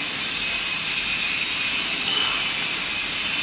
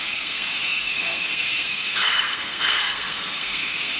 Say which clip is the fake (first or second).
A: second